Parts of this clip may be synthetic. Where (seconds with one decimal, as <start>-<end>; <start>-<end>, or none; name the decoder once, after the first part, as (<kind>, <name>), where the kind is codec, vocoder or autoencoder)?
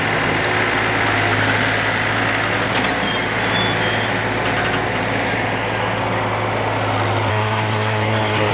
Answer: 7.3-8.5 (codec, SNAC)